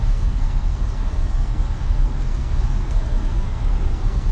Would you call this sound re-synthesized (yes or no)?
yes